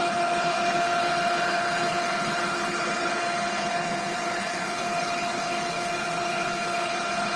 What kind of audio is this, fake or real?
fake